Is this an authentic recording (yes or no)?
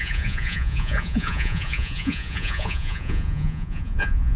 no